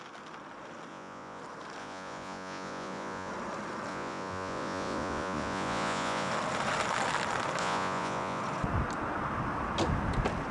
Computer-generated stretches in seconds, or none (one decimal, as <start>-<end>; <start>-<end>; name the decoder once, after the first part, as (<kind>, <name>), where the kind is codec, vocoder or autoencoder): 0.9-1.4 (vocoder, Vocos); 1.8-3.3; 3.9-6.3; 7.6-8.4